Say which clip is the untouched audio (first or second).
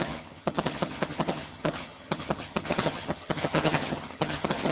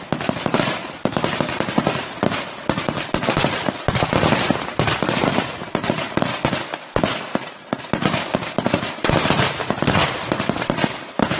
second